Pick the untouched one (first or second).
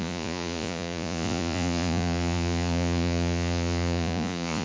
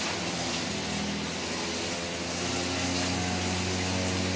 second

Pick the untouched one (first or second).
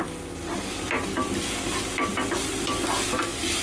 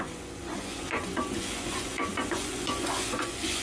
first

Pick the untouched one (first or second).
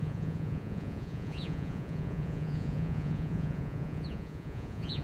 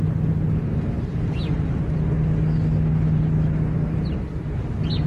second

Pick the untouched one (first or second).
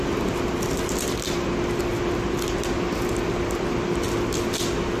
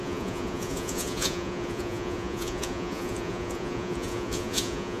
first